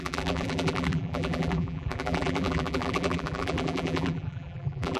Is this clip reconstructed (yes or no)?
yes